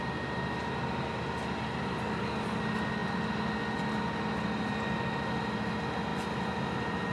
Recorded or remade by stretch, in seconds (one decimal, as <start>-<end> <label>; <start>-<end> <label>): 0.0-1.9 recorded; 1.9-2.6 remade; 2.6-7.1 recorded